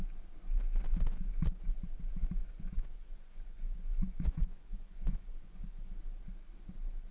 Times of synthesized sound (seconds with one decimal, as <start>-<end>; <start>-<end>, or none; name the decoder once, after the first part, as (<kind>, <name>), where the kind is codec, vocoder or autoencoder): 2.4-5.8 (vocoder, Vocos)